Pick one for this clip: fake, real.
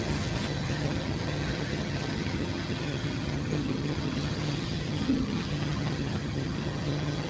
fake